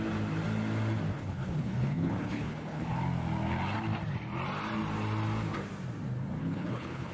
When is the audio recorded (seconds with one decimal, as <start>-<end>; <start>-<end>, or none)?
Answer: 0.0-1.1; 3.0-6.4

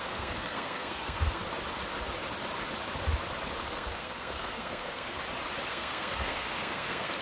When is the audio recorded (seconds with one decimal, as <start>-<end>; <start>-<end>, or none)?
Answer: 1.4-3.7; 5.1-5.7

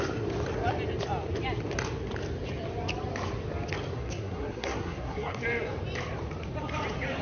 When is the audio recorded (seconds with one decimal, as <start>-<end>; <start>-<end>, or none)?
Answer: 0.0-3.9; 5.4-7.2

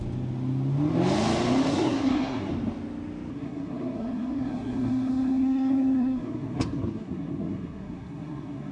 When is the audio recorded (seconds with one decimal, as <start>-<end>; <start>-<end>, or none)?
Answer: 0.0-1.7; 2.5-3.3